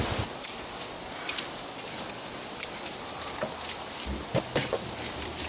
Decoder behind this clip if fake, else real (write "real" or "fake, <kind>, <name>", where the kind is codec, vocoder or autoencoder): real